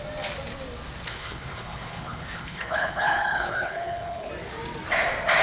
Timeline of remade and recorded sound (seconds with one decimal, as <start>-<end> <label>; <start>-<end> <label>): 0.0-1.1 recorded; 1.1-4.3 remade; 4.3-5.4 recorded